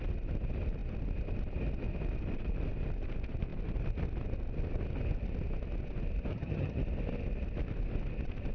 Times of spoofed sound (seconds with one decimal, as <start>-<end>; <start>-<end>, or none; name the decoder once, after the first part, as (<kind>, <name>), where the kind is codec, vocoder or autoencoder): 6.3-6.8 (vocoder, HiFi-GAN)